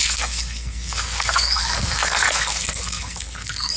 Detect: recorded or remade remade